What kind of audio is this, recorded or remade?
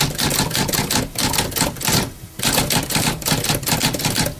recorded